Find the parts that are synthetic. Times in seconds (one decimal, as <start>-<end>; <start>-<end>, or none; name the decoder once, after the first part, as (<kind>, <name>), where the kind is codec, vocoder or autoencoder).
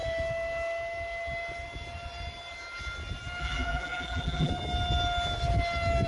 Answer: 3.4-4.5 (vocoder, BigVGAN v2)